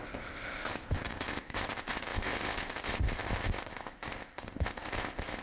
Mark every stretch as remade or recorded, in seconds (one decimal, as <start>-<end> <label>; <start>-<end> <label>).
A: 0.0-5.4 remade